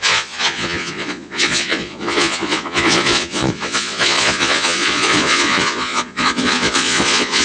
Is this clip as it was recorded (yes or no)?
no